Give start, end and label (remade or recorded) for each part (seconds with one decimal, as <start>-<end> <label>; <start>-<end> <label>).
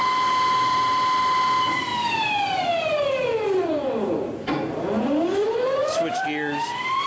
0.0-7.1 recorded